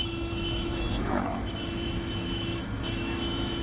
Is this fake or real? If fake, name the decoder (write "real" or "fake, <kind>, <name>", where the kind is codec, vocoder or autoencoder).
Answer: fake, autoencoder, DAC-VAE